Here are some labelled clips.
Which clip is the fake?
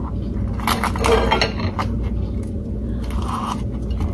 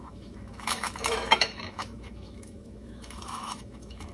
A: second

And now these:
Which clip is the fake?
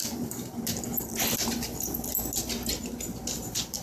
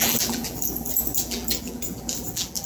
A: second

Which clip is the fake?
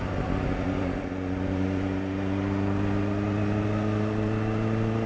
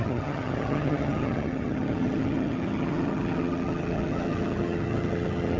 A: second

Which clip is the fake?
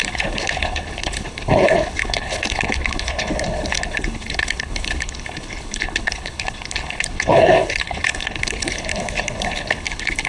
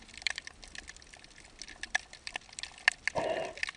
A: first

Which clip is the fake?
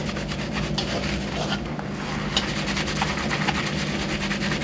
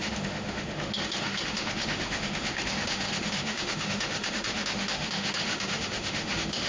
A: second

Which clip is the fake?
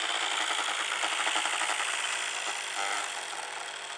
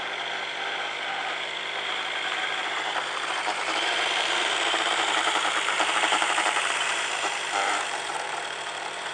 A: second